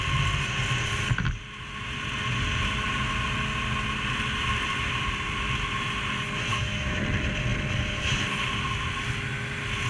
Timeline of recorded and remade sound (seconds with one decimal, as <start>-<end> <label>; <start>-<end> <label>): 0.0-6.5 recorded; 6.5-7.0 remade; 7.0-9.9 recorded